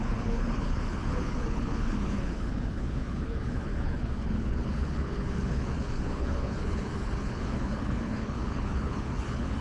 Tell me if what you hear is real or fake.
fake